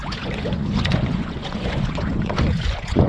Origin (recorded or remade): remade